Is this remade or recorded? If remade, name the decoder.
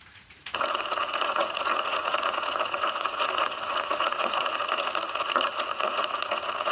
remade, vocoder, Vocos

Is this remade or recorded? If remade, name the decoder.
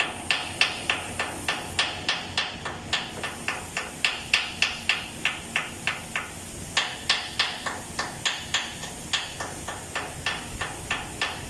recorded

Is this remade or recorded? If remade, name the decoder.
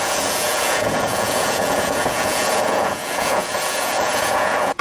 remade, vocoder, Vocos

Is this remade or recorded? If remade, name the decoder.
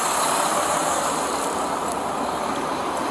recorded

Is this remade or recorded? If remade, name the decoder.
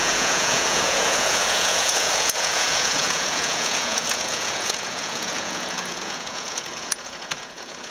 remade, vocoder, Vocos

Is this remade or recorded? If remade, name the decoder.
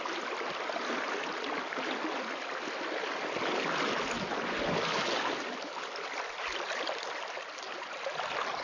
recorded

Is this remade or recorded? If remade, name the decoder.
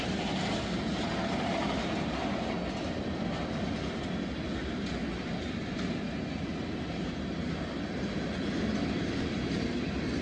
recorded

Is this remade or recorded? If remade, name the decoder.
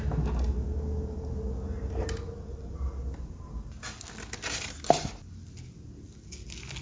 recorded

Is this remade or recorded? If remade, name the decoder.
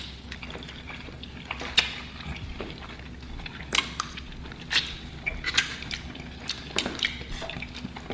recorded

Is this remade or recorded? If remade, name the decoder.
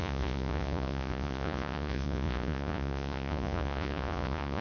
remade, vocoder, Vocos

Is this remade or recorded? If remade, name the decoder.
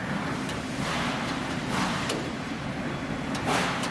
recorded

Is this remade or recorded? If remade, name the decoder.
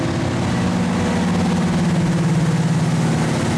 recorded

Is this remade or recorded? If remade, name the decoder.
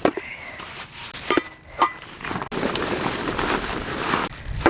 recorded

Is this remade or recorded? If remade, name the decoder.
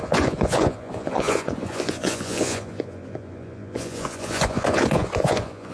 remade, vocoder, Vocos